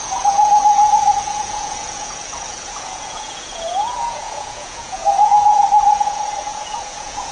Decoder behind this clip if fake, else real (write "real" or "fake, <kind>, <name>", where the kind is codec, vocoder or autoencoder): fake, vocoder, Vocos